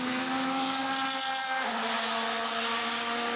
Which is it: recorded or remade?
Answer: recorded